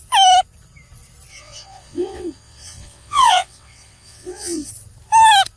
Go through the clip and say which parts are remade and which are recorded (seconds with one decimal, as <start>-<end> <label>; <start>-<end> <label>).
0.0-1.3 recorded; 1.3-4.7 remade; 4.7-5.6 recorded